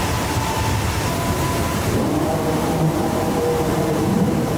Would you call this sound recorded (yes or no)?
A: no